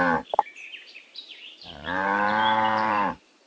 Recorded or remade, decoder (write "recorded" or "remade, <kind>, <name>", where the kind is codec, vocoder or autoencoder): remade, vocoder, BigVGAN v2